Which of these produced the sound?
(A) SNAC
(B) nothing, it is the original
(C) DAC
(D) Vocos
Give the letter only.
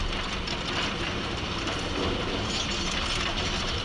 B